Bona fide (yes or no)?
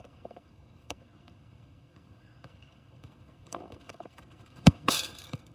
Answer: no